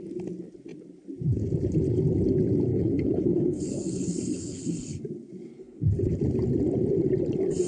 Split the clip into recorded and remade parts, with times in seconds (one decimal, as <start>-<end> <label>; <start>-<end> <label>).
0.0-2.7 recorded; 2.7-5.0 remade; 5.0-5.5 recorded; 5.5-6.1 remade; 6.1-7.7 recorded